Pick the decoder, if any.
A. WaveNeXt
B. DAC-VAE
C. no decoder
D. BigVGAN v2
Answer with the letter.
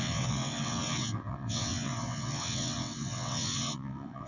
A